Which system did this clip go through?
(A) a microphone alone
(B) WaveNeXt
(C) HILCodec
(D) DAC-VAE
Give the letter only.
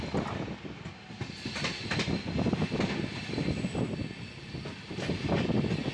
A